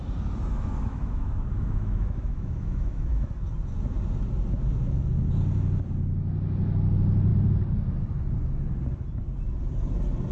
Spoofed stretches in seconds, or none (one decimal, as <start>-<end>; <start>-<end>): 0.5-3.3